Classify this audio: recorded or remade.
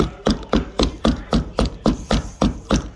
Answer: remade